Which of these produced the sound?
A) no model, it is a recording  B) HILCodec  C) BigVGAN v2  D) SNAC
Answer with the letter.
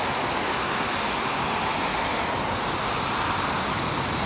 A